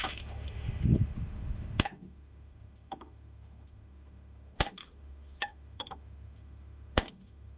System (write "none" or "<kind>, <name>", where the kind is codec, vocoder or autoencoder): autoencoder, DAC-VAE